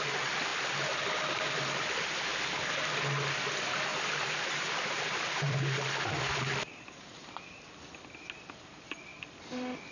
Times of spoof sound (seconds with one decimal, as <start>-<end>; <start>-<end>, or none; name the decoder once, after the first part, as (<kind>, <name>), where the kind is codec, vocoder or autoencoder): 0.5-1.6 (vocoder, BigVGAN v2)